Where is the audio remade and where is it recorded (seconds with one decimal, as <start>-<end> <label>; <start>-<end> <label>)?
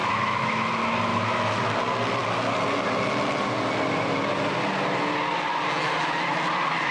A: 0.0-0.7 remade; 0.7-1.1 recorded; 1.1-1.6 remade; 1.6-6.9 recorded